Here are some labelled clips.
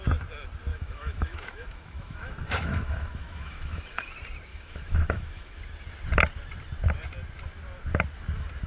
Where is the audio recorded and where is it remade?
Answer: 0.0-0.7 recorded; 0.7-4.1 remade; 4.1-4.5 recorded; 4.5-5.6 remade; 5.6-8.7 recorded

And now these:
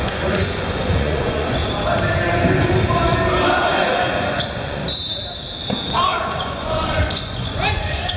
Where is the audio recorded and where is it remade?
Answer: 0.0-1.6 remade; 1.6-3.9 recorded; 3.9-4.8 remade; 4.8-5.9 recorded; 5.9-8.2 remade

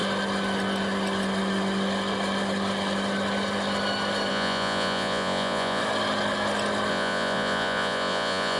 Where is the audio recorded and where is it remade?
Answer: 0.0-4.3 recorded; 4.3-5.8 remade; 5.8-6.9 recorded; 6.9-8.6 remade

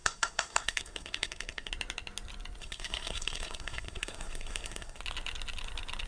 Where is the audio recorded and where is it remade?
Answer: 0.0-1.7 remade; 1.7-2.6 recorded; 2.6-5.0 remade; 5.0-6.1 recorded

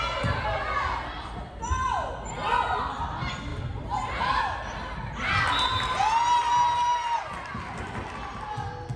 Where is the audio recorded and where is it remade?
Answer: 0.0-3.5 recorded; 3.5-4.4 remade; 4.4-9.0 recorded

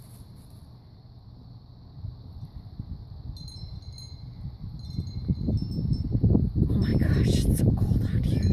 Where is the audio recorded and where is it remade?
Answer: 0.0-8.5 recorded